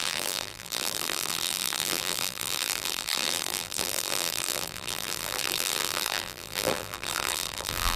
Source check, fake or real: fake